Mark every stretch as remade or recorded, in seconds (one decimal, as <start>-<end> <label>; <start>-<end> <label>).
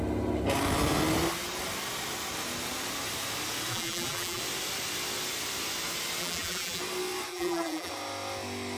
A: 0.0-3.7 recorded; 3.7-4.4 remade; 4.4-6.2 recorded; 6.2-6.8 remade; 6.8-7.3 recorded; 7.3-7.9 remade; 7.9-8.8 recorded